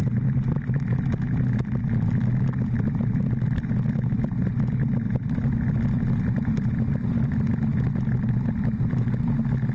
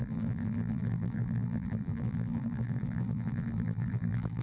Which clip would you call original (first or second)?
first